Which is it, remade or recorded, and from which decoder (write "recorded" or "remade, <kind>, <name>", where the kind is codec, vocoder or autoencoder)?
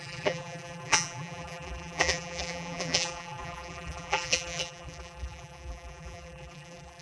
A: remade, vocoder, BigVGAN v2